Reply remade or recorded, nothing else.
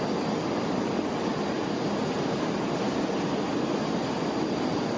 recorded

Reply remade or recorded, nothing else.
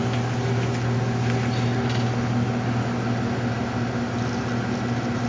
recorded